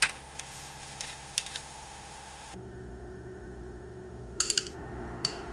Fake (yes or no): yes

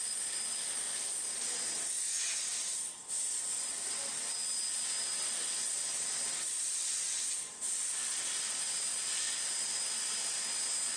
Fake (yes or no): no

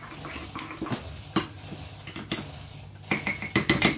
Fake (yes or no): no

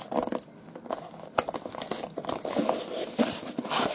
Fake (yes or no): no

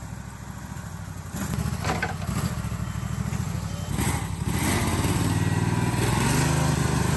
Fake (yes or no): no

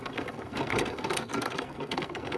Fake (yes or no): yes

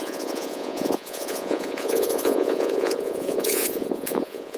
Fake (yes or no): yes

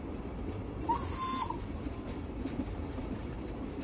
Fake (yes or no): no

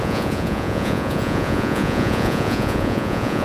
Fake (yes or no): yes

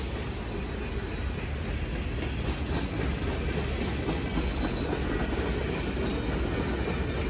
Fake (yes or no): no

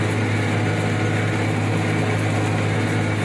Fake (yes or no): no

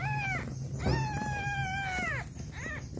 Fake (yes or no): no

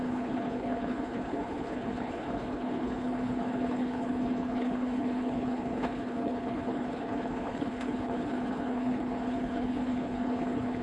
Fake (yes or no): yes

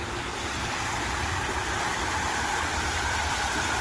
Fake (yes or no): no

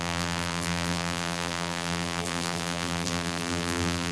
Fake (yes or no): yes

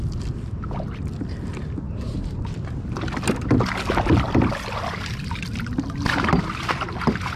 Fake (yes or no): no